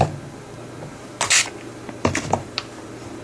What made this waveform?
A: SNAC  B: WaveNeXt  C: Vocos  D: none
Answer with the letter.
D